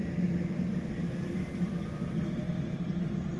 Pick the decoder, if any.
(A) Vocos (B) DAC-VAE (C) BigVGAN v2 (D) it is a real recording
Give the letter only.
C